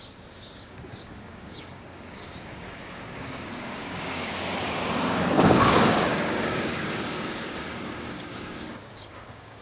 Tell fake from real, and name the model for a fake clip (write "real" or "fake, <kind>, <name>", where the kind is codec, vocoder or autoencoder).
fake, codec, DAC